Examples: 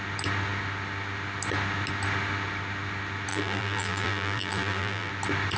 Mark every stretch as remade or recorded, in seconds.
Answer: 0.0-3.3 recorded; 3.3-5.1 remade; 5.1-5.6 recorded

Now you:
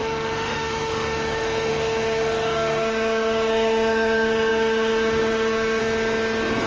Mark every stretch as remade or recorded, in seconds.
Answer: 0.0-5.8 remade; 5.8-6.7 recorded

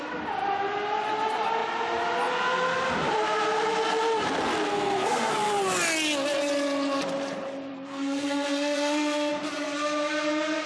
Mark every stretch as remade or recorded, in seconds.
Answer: 0.0-4.7 recorded; 4.7-5.3 remade; 5.3-7.7 recorded; 7.7-9.3 remade; 9.3-10.7 recorded

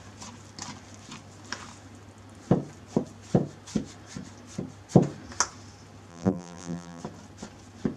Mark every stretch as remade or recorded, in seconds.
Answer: 0.0-6.1 recorded; 6.1-7.0 remade; 7.0-8.0 recorded

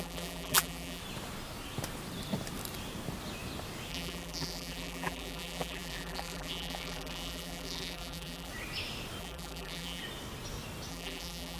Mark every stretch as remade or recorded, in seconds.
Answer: 0.0-1.0 remade; 1.0-3.9 recorded; 3.9-8.5 remade; 8.5-9.2 recorded; 9.2-10.0 remade; 10.0-10.9 recorded; 10.9-11.6 remade

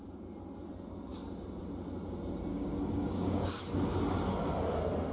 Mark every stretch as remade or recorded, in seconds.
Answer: 0.0-2.5 recorded; 2.5-3.6 remade; 3.6-5.1 recorded

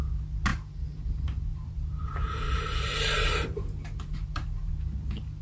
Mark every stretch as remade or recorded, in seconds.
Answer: 0.0-0.5 recorded; 0.5-1.1 remade; 1.1-1.5 recorded; 1.5-4.7 remade; 4.7-5.4 recorded

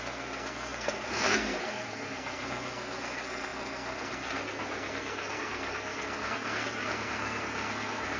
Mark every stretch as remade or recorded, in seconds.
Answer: 0.0-8.2 remade